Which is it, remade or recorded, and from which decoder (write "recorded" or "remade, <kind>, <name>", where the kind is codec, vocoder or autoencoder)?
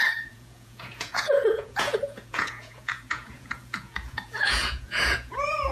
remade, vocoder, Vocos